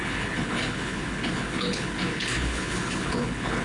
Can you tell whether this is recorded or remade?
remade